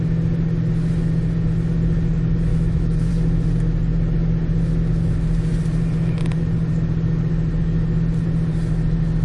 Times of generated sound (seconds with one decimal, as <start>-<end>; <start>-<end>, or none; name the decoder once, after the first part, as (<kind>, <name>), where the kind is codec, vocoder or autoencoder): 2.5-3.1 (autoencoder, DAC-VAE)